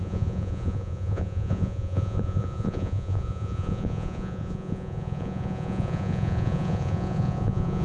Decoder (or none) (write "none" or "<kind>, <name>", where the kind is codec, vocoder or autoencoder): vocoder, Vocos